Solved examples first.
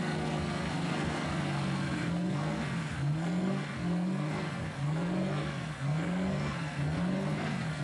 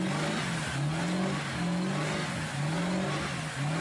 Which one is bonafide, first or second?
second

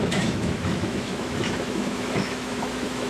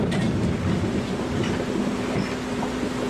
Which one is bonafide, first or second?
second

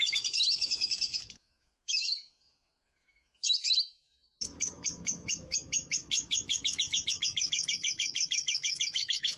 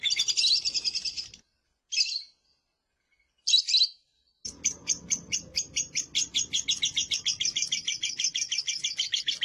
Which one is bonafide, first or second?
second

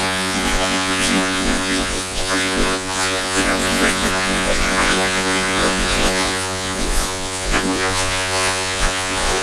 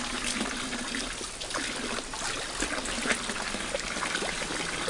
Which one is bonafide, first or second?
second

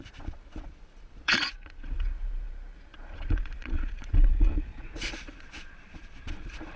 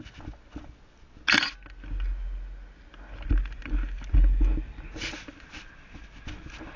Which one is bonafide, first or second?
second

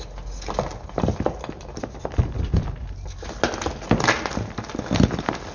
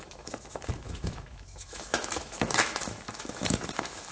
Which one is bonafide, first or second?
first